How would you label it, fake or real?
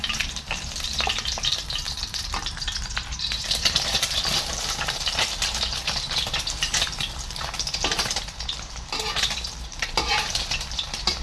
fake